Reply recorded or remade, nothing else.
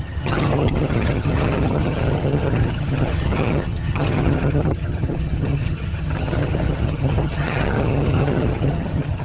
remade